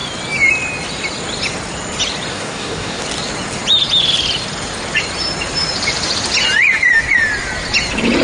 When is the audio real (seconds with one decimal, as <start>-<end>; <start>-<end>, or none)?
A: 0.0-2.3; 3.0-8.2